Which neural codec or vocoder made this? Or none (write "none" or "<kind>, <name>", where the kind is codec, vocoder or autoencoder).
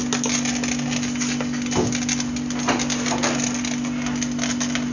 none